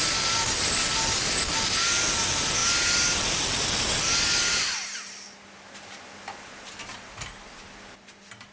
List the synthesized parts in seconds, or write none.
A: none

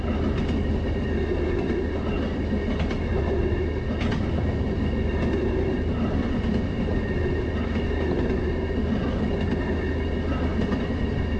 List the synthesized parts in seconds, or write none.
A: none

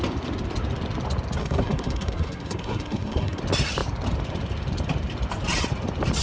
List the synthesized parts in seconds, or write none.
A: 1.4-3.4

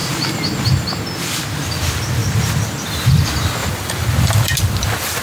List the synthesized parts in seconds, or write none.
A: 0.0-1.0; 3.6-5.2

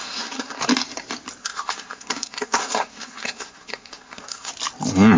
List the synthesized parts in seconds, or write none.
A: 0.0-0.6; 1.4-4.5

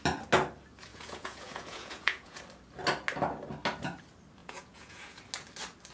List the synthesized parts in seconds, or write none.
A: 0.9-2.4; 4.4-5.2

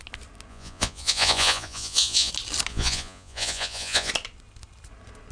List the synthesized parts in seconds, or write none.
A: 0.5-2.3; 2.7-4.1